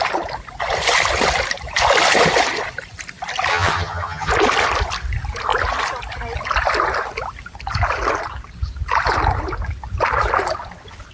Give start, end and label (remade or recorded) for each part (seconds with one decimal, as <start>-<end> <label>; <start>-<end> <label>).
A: 0.0-3.5 recorded; 3.5-4.3 remade; 4.3-11.1 recorded

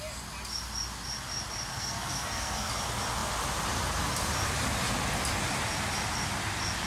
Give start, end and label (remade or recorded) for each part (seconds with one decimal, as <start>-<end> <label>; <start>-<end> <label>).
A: 0.0-1.7 recorded; 1.7-2.7 remade; 2.7-6.9 recorded